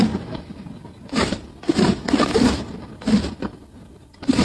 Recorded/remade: remade